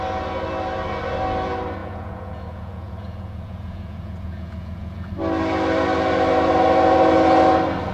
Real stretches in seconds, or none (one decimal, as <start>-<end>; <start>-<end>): 0.0-1.8; 5.1-7.9

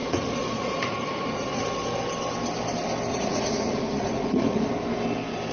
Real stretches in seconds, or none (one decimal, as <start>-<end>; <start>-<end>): 1.6-3.1; 4.7-5.5

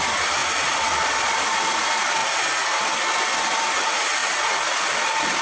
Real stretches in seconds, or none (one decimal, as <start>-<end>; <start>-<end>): 0.0-5.4

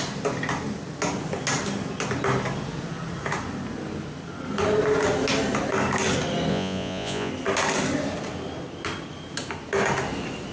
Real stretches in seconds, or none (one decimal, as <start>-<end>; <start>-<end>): 0.0-6.5; 7.3-10.5

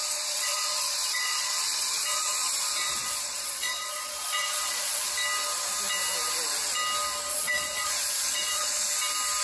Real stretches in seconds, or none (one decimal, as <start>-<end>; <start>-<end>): 5.1-7.3; 8.9-9.4

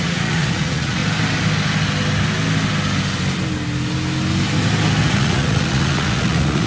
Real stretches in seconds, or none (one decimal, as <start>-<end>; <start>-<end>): 1.0-5.0

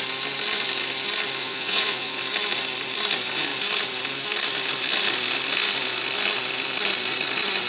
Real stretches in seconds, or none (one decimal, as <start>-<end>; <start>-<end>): 0.0-1.4; 2.2-7.7